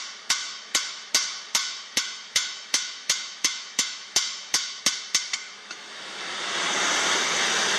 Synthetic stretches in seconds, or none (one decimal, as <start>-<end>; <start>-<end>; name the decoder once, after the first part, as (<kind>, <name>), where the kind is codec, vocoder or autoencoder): 0.4-1.1 (autoencoder, DAC-VAE); 1.6-4.8; 5.4-6.2